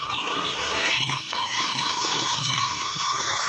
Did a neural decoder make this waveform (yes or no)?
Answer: yes